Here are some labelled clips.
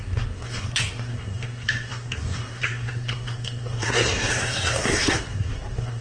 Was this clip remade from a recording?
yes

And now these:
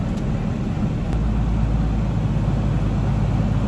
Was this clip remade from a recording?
no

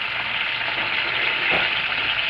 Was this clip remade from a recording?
no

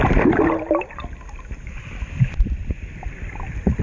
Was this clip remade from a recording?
no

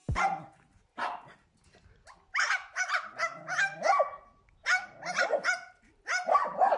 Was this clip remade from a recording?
no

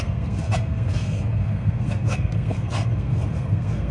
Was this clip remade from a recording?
yes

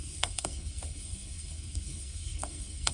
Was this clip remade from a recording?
yes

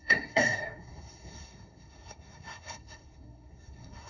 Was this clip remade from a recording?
yes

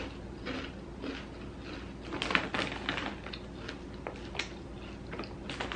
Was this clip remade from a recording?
no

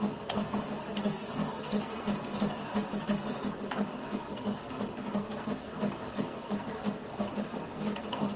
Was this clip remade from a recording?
yes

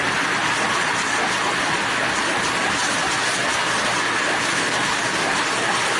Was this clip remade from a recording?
no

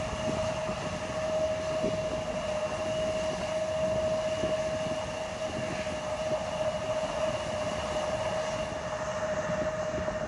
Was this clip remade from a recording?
no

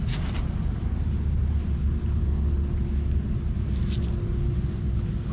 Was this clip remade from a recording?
no